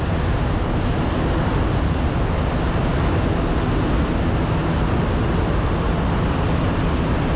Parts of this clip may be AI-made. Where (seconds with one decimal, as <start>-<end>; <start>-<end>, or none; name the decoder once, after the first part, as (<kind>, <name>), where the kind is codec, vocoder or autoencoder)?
none